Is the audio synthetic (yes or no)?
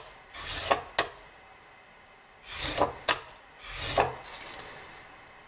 no